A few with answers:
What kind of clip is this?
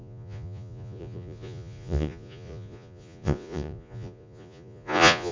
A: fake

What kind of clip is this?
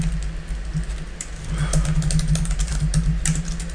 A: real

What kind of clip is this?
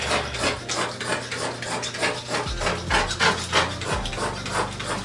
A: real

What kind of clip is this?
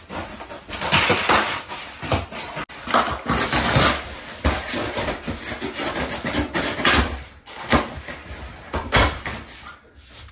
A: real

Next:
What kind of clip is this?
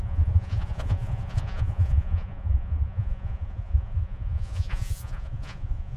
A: fake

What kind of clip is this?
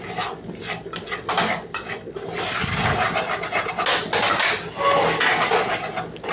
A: real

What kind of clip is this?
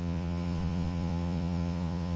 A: fake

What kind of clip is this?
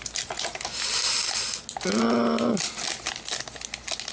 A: real